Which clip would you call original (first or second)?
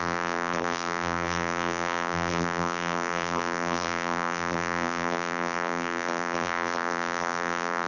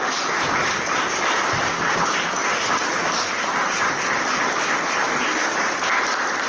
second